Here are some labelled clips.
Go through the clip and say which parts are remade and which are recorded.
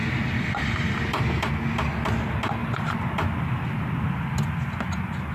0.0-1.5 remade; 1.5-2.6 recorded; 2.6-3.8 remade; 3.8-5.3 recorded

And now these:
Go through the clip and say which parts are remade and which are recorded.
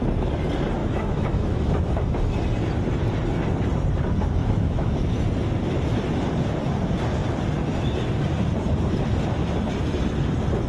0.0-0.8 recorded; 0.8-1.9 remade; 1.9-4.4 recorded; 4.4-5.0 remade; 5.0-10.7 recorded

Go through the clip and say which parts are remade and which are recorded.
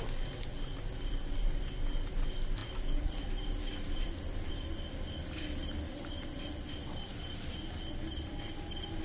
0.0-9.0 recorded